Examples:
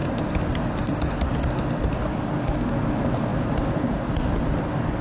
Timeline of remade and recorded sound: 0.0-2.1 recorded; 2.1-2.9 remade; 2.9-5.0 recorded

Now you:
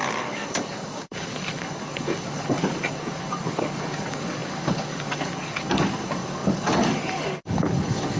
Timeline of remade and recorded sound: 0.0-8.2 remade